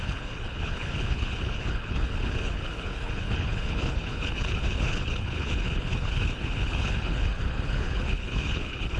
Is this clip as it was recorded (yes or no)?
no